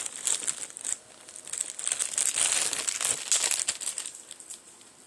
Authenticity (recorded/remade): recorded